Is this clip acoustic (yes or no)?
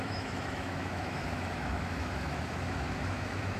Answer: no